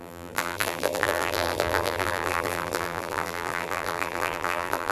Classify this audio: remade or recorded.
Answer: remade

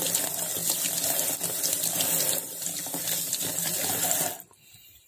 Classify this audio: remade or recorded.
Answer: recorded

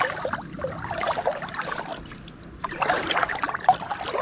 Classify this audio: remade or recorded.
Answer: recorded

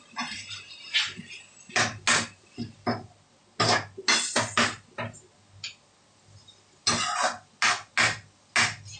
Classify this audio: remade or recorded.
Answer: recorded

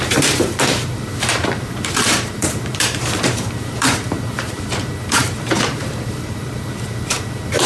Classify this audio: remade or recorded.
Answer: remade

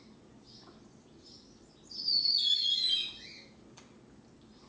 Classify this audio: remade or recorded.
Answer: recorded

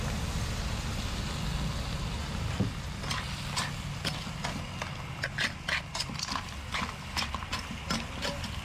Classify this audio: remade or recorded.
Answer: recorded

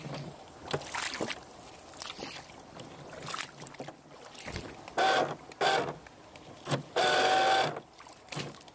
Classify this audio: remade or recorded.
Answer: recorded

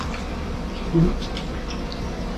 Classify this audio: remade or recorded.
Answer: remade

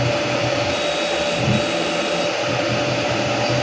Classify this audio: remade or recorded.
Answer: remade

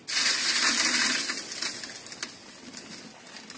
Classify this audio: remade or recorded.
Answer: recorded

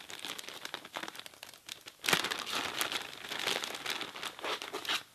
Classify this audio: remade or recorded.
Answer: recorded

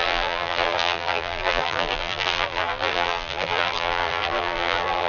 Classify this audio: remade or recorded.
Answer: remade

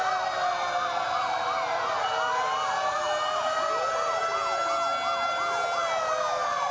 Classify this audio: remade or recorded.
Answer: recorded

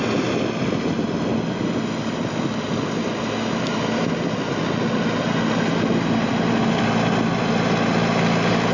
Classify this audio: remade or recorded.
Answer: recorded